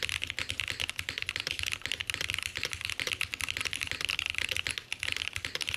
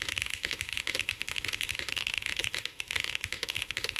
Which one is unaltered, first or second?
first